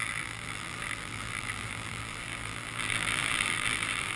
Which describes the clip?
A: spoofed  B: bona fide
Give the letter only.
A